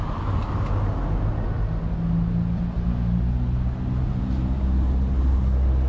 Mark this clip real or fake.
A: real